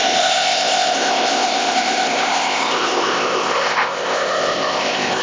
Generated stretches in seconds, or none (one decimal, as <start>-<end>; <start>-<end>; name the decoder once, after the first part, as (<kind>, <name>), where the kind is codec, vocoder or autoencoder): 0.0-5.2 (codec, ZipCodec)